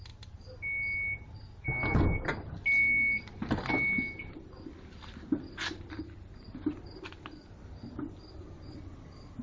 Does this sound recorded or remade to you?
recorded